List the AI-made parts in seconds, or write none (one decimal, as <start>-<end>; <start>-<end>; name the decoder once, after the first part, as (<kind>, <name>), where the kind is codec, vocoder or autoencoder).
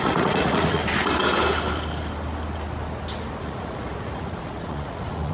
0.0-0.8 (vocoder, Vocos); 3.4-5.3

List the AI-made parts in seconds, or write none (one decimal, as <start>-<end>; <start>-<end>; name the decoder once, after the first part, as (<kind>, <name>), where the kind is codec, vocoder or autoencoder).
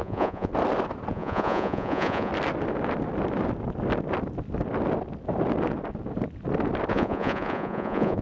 0.0-0.5 (vocoder, Vocos); 1.1-2.3; 6.9-8.2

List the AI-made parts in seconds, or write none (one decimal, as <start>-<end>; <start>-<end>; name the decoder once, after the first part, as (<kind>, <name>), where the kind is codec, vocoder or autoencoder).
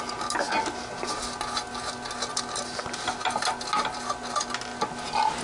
none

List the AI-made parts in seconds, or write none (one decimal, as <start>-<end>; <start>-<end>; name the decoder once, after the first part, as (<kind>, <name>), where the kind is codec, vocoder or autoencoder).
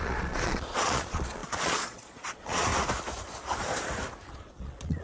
0.0-2.7 (vocoder, Vocos); 4.3-5.0